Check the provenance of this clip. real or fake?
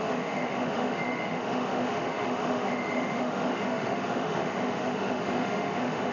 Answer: fake